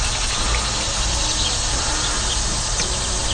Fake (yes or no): no